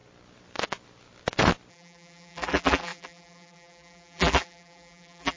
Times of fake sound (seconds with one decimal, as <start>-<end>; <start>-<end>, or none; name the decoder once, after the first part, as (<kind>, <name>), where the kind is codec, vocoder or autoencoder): 1.7-5.4 (vocoder, BigVGAN v2)